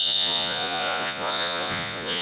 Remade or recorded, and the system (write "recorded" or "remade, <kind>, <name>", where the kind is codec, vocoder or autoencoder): remade, vocoder, Vocos